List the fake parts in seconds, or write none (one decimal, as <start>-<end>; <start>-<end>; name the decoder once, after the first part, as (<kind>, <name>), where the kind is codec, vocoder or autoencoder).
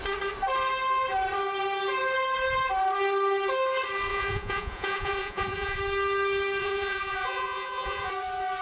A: 4.1-5.8 (vocoder, Vocos); 6.6-8.1